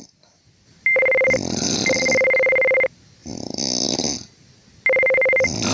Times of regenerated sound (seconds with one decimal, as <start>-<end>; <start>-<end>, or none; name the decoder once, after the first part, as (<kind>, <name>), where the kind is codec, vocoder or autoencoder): none